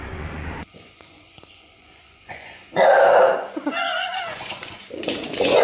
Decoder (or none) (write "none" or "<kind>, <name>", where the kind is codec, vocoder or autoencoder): vocoder, Vocos